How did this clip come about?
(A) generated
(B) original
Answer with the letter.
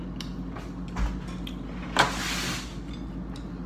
B